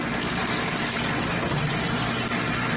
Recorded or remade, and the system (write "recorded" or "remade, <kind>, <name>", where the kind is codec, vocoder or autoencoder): recorded